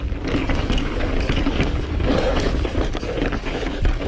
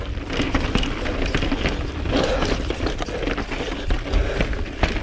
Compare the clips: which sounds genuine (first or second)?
second